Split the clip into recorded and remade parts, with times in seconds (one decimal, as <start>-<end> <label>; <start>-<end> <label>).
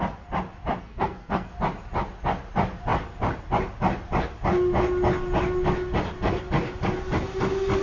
0.0-0.8 recorded; 0.8-1.5 remade; 1.5-7.8 recorded